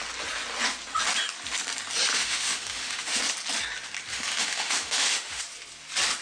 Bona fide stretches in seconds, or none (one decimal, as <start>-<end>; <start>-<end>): 0.0-2.1; 3.2-4.1; 5.4-6.2